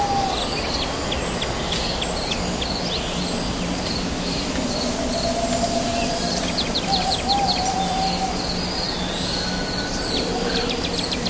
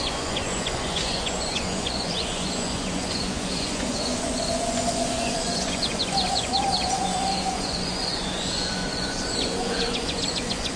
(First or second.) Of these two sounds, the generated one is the second